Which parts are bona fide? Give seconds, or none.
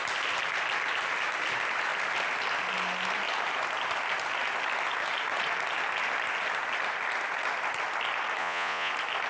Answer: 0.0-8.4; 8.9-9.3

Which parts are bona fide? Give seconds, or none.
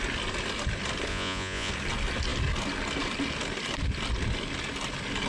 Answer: 0.0-1.1; 1.7-5.3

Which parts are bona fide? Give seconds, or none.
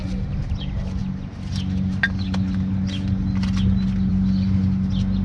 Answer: 0.0-5.2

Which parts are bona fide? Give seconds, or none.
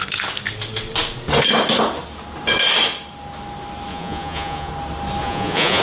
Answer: 0.0-3.9; 4.7-5.2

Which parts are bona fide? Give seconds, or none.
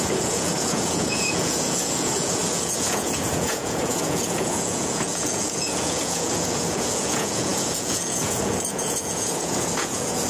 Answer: none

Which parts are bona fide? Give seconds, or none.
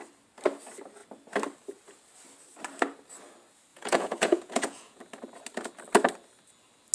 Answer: 0.0-3.7; 5.0-6.9